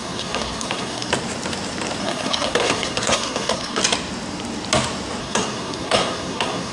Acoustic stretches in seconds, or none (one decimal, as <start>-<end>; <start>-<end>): 1.1-2.0; 3.8-5.2